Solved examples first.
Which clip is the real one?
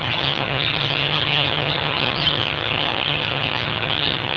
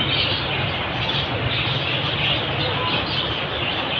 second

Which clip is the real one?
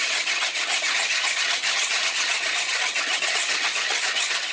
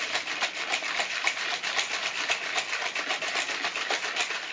second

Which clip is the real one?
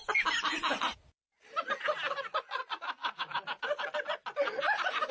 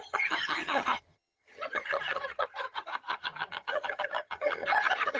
first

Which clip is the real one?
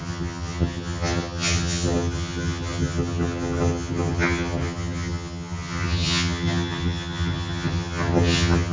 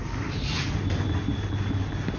second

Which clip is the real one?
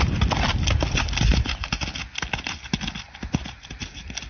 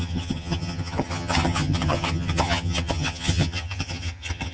first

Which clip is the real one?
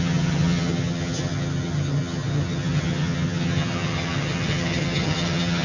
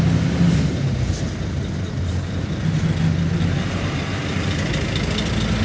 second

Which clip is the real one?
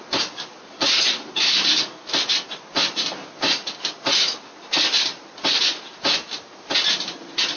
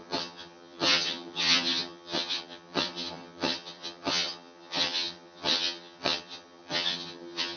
first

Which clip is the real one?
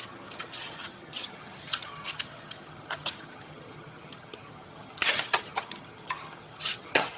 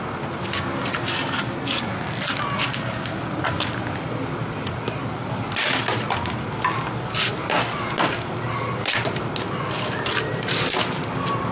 second